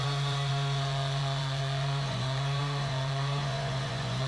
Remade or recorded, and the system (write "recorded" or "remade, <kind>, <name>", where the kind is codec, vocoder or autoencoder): remade, vocoder, Vocos